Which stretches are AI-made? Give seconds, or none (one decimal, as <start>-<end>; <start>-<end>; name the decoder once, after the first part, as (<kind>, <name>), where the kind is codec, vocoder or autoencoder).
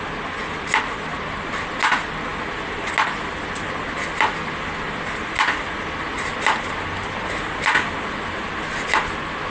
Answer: none